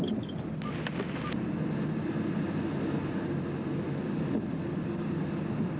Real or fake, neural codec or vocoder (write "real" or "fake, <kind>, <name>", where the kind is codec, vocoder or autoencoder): real